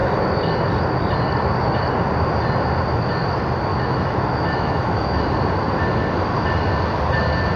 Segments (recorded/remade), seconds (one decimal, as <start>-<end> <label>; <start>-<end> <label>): 0.0-3.7 recorded; 3.7-5.2 remade; 5.2-7.6 recorded

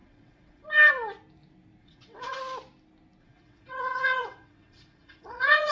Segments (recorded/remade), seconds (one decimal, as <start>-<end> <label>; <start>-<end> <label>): 0.0-0.9 remade; 0.9-1.8 recorded; 1.8-2.4 remade; 2.4-3.2 recorded; 3.2-5.7 remade

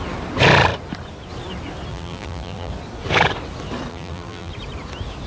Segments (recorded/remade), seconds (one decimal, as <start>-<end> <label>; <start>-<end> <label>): 0.0-1.9 recorded; 1.9-2.7 remade; 2.7-3.9 recorded; 3.9-4.5 remade; 4.5-5.3 recorded

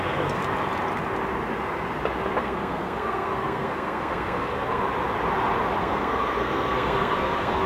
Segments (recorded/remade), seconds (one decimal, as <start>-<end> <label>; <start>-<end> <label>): 0.0-0.4 remade; 0.4-2.4 recorded; 2.4-4.8 remade; 4.8-5.8 recorded; 5.8-7.7 remade